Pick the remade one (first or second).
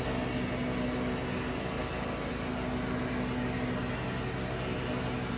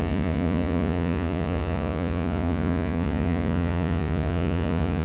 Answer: second